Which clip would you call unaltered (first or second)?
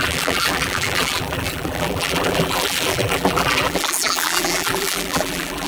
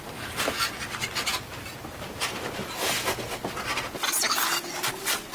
second